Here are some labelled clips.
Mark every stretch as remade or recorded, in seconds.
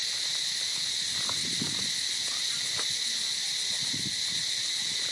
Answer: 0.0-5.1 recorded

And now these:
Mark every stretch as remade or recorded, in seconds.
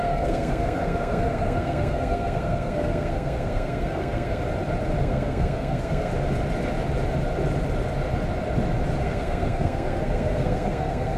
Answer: 0.0-4.4 remade; 4.4-5.0 recorded; 5.0-6.1 remade; 6.1-9.0 recorded; 9.0-11.2 remade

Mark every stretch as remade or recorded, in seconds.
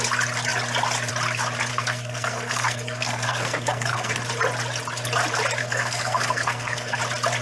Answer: 0.0-1.7 recorded; 1.7-4.1 remade; 4.1-5.6 recorded; 5.6-7.0 remade; 7.0-7.4 recorded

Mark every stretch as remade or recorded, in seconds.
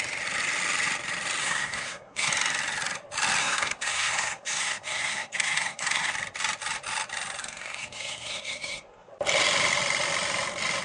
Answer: 0.0-1.4 recorded; 1.4-2.3 remade; 2.3-3.4 recorded; 3.4-6.1 remade; 6.1-7.4 recorded; 7.4-9.1 remade; 9.1-10.8 recorded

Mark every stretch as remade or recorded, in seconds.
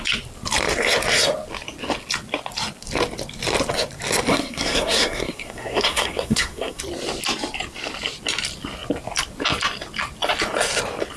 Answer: 0.0-4.3 recorded; 4.3-6.8 remade; 6.8-11.2 recorded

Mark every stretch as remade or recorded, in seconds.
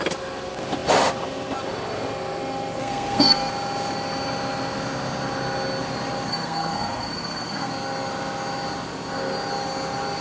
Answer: 0.0-2.8 recorded; 2.8-3.5 remade; 3.5-6.3 recorded; 6.3-7.7 remade; 7.7-10.2 recorded